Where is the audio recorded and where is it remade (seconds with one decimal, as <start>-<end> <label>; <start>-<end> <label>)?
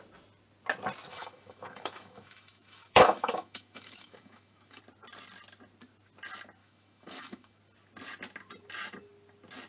0.0-1.1 recorded; 1.1-4.8 remade; 4.8-6.6 recorded; 6.6-7.6 remade; 7.6-9.7 recorded